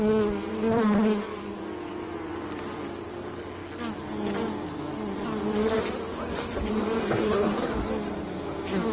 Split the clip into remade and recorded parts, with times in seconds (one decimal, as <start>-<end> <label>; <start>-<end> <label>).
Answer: 0.0-7.0 recorded; 7.0-7.7 remade; 7.7-8.9 recorded